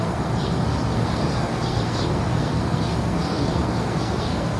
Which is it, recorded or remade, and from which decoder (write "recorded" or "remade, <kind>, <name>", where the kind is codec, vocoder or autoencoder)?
remade, codec, SNAC